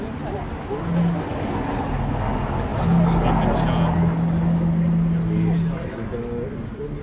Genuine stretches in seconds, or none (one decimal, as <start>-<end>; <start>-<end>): 0.0-7.0